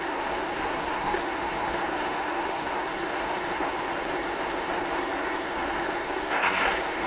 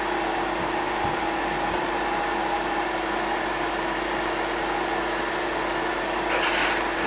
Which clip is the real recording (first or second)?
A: second